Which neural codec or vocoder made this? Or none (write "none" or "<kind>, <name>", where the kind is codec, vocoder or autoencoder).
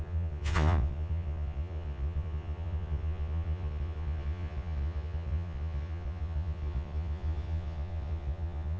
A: vocoder, Vocos